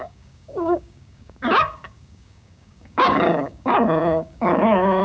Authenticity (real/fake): fake